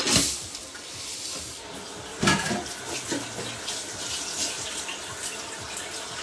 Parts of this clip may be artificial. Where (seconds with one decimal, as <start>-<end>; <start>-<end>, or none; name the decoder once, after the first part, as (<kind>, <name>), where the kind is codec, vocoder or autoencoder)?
none